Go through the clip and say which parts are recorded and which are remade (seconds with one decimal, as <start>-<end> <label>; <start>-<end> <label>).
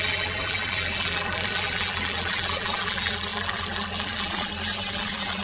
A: 0.0-5.4 remade